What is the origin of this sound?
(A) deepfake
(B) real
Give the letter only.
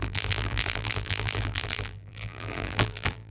A